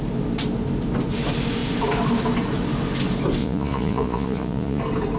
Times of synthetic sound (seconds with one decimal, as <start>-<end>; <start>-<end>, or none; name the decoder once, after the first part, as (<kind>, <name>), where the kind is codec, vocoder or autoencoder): 3.4-4.8 (vocoder, Vocos)